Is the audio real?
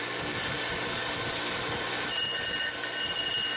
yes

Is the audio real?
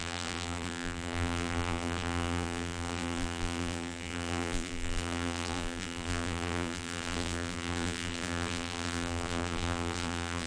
no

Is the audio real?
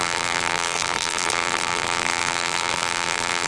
no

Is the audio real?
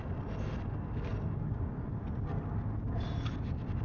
yes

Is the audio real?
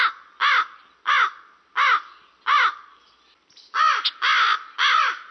yes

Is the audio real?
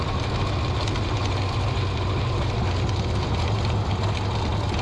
yes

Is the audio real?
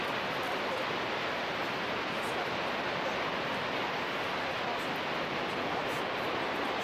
yes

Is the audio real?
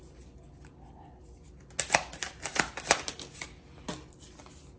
yes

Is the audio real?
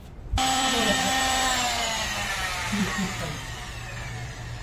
no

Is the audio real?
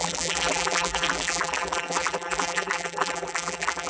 no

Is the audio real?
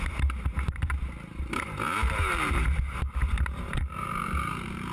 no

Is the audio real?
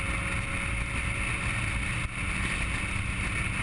yes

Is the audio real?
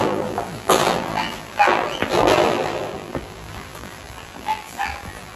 no